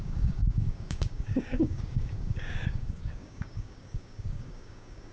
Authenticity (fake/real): fake